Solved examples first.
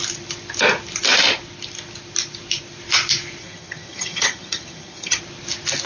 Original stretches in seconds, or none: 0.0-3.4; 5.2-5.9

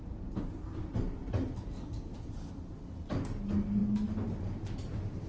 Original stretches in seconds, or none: 0.0-5.3